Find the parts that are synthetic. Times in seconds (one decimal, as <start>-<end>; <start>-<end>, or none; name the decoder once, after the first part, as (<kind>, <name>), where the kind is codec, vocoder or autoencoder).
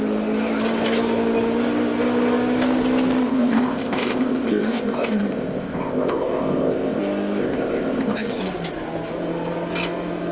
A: 3.3-7.0 (codec, ZipCodec); 7.4-8.4